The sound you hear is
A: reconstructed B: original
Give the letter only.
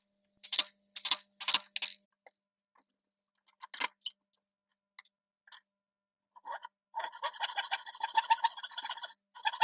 B